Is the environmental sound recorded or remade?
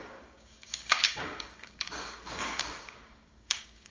remade